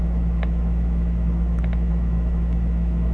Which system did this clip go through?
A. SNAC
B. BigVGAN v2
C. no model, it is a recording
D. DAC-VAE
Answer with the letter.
D